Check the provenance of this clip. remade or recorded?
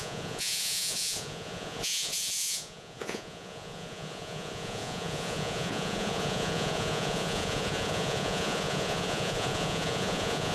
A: remade